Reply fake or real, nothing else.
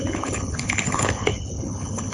fake